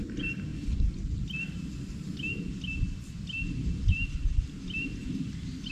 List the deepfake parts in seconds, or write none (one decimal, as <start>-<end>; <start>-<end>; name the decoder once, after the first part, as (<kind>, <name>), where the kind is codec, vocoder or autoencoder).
0.0-0.5 (vocoder, BigVGAN v2); 3.9-5.0